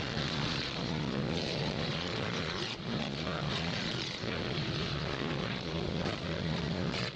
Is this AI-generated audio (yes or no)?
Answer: yes